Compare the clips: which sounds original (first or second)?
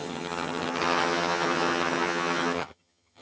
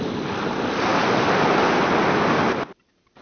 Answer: second